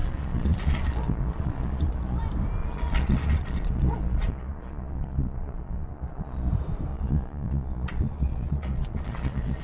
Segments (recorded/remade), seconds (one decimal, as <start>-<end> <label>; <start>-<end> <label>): 0.0-2.2 remade; 2.2-2.6 recorded; 2.6-6.5 remade; 6.5-6.9 recorded; 6.9-9.6 remade

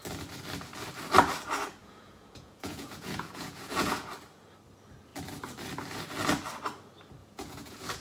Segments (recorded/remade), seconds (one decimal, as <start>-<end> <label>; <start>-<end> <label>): 0.0-1.8 recorded; 1.8-4.1 remade; 4.1-7.2 recorded; 7.2-8.0 remade